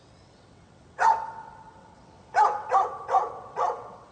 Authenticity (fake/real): fake